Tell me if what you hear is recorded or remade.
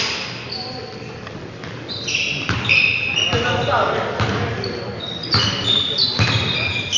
recorded